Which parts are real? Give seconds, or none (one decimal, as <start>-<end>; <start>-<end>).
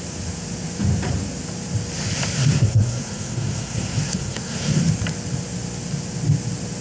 0.0-2.4; 4.8-6.8